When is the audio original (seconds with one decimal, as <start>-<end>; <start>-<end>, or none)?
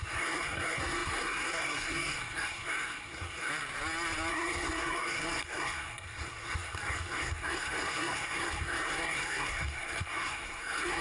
3.5-4.3